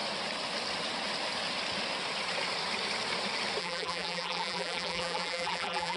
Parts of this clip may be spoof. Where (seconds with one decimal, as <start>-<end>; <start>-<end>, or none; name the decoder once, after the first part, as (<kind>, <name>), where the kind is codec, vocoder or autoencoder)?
3.6-6.0 (vocoder, BigVGAN v2)